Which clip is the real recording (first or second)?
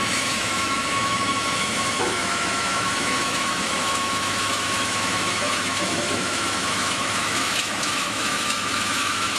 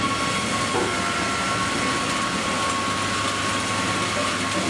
second